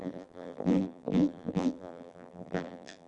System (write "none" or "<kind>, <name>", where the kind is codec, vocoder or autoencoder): vocoder, BigVGAN v2